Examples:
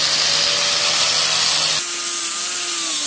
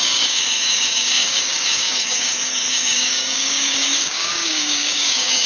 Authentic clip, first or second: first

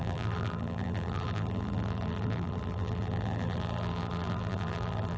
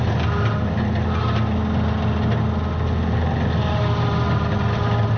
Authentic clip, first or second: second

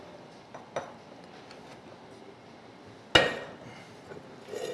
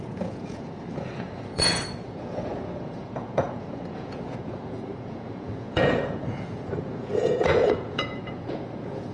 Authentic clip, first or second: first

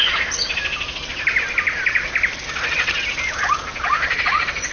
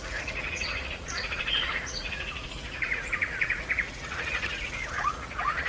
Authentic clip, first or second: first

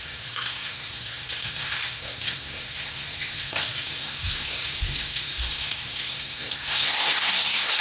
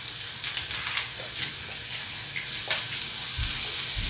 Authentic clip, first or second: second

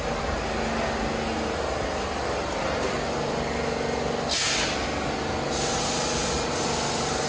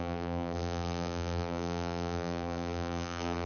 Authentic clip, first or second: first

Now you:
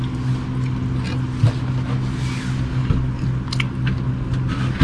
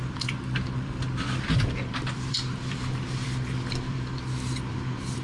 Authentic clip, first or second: first